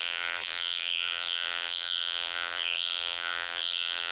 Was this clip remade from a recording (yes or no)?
yes